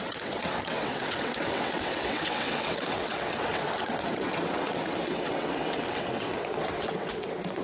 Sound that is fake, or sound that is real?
fake